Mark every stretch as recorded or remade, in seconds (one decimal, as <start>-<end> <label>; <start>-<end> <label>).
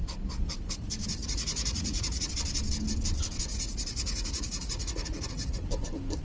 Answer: 0.0-1.2 recorded; 1.2-2.3 remade; 2.3-3.5 recorded; 3.5-5.6 remade; 5.6-6.2 recorded